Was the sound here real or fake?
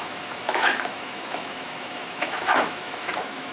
fake